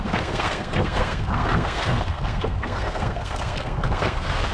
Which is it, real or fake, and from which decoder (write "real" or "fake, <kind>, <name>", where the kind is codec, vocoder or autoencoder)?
fake, codec, SNAC